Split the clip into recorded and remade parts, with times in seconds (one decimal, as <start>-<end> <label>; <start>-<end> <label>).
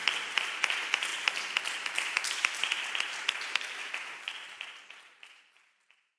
0.0-6.2 recorded